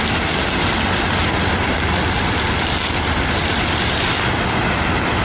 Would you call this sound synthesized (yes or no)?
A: no